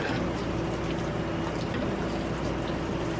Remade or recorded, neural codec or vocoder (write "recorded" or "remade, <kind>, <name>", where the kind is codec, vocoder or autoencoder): recorded